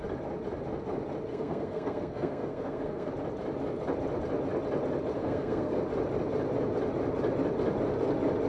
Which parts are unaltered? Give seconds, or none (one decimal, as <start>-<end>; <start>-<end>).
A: 0.0-1.3; 3.1-5.1; 5.8-8.5